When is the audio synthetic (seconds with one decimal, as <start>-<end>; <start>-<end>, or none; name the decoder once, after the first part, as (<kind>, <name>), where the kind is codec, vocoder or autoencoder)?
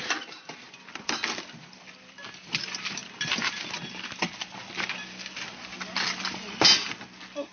none